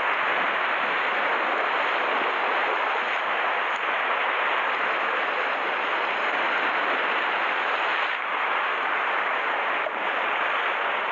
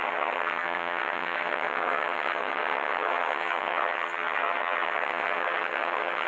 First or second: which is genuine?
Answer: first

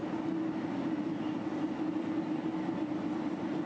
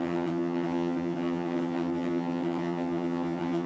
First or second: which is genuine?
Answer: first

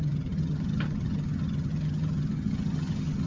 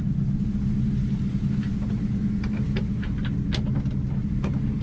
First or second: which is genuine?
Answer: second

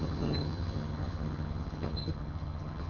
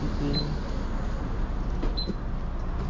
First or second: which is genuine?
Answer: second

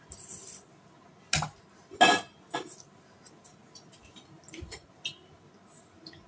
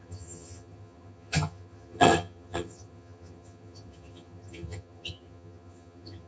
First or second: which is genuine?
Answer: first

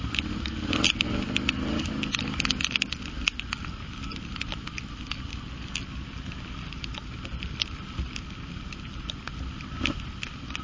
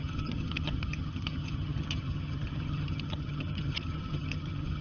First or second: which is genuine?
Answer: first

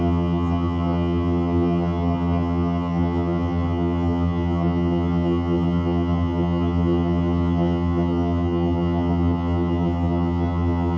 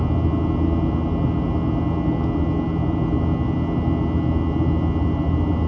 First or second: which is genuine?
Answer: second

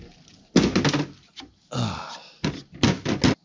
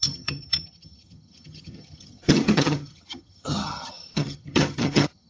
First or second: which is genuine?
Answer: first